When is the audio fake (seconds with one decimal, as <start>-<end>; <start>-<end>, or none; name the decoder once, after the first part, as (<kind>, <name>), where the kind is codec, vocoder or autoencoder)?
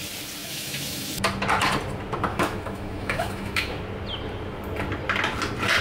0.4-1.1 (autoencoder, DAC-VAE); 2.3-3.8